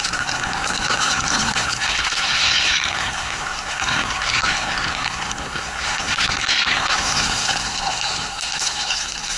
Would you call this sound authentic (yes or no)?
no